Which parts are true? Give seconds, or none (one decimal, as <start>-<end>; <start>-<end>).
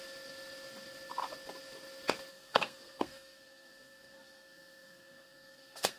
0.0-2.3